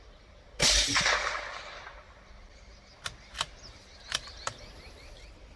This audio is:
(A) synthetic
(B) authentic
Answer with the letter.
B